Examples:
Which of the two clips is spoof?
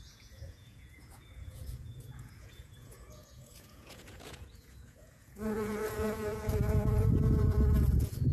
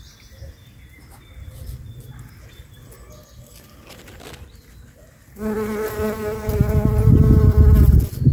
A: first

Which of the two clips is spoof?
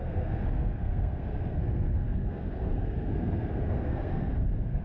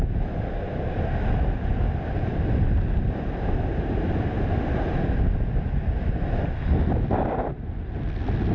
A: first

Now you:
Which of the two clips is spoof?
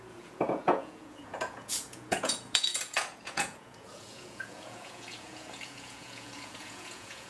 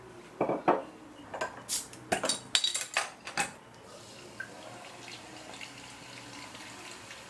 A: first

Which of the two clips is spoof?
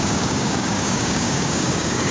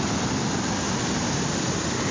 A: first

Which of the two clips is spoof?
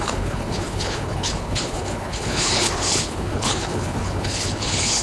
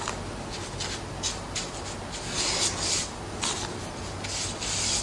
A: first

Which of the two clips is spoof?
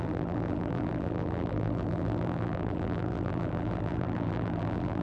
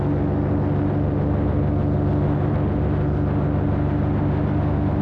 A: first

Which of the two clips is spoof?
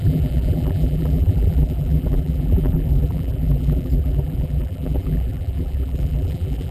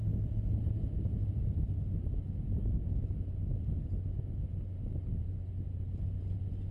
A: first